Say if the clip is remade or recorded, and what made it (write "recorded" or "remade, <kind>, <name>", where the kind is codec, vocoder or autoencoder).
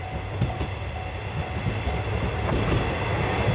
recorded